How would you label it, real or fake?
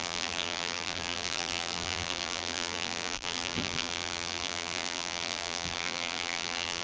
fake